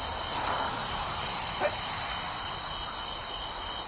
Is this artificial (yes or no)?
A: no